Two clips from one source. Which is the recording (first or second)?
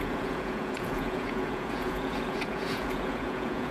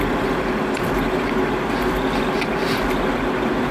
second